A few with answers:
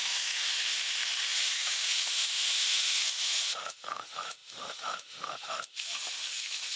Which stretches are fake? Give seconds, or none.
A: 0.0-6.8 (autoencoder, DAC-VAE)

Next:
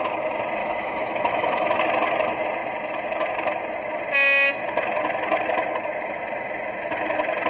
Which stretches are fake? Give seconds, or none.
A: 0.6-1.8 (autoencoder, DAC-VAE)

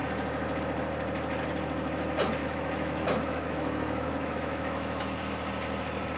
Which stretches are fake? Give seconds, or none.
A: 2.4-5.2 (autoencoder, DAC-VAE)

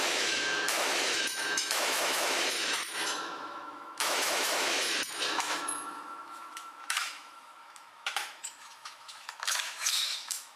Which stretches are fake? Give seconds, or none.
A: 0.0-10.6 (autoencoder, DAC-VAE)

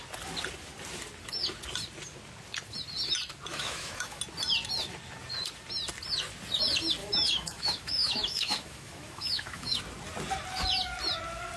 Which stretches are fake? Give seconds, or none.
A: 3.5-4.2 (autoencoder, DAC-VAE); 7.0-9.8

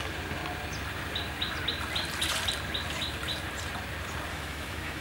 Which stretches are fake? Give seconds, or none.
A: 4.3-5.0 (autoencoder, DAC-VAE)